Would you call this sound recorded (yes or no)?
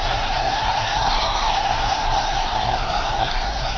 no